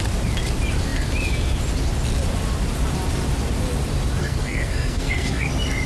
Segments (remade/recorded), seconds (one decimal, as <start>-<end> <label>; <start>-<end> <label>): 0.0-4.2 recorded; 4.2-5.5 remade; 5.5-5.9 recorded

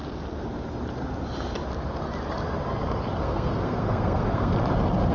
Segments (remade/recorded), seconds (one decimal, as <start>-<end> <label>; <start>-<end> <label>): 0.0-3.1 recorded; 3.1-4.5 remade; 4.5-5.1 recorded

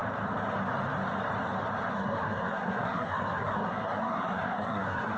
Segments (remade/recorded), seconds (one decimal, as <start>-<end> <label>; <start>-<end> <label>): 0.0-1.9 recorded; 1.9-5.2 remade